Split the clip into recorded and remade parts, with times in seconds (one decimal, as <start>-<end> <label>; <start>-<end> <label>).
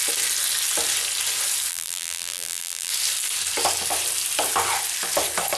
0.0-1.7 recorded; 1.7-2.9 remade; 2.9-5.6 recorded